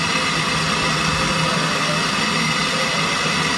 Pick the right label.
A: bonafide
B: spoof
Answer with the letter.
A